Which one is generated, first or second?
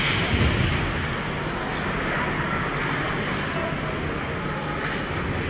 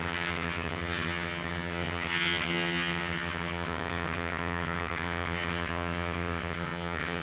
second